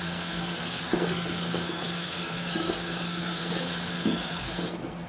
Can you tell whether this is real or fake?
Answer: fake